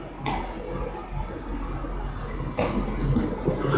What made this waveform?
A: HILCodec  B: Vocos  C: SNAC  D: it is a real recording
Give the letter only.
D